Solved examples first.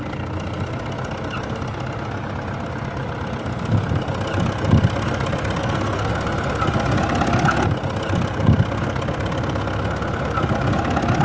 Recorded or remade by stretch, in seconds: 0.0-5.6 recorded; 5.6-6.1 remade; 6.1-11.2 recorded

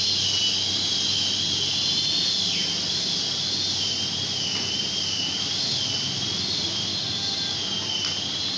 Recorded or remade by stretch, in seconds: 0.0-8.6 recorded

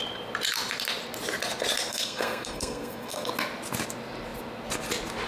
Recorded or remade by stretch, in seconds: 0.0-1.9 recorded; 1.9-3.3 remade; 3.3-5.3 recorded